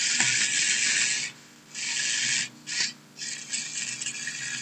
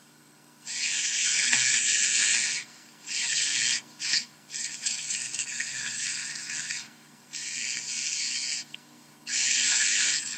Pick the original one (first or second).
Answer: first